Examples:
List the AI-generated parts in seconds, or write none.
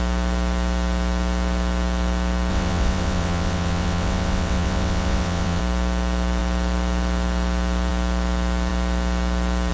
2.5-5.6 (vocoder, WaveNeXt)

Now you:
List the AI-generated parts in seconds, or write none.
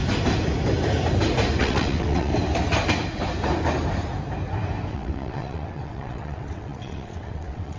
1.6-2.3 (vocoder, WaveNeXt); 4.9-7.8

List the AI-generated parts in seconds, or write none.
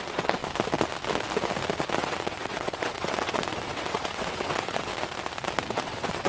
0.0-0.4 (vocoder, WaveNeXt); 2.0-4.9; 5.7-6.3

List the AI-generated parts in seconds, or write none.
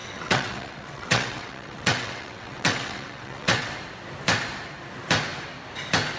0.0-3.7 (vocoder, WaveNeXt)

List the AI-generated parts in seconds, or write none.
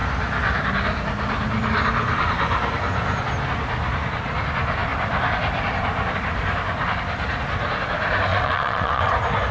8.3-9.1 (vocoder, WaveNeXt)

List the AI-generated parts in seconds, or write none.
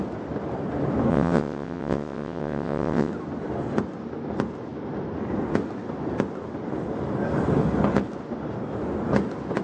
1.1-3.1 (vocoder, WaveNeXt)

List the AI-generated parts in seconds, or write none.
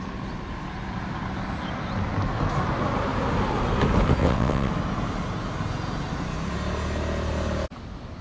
4.2-4.7 (vocoder, WaveNeXt)